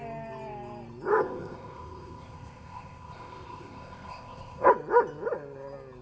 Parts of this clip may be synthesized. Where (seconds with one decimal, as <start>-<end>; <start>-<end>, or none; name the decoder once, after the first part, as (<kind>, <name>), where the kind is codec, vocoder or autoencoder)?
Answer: 1.1-4.7 (codec, ZipCodec)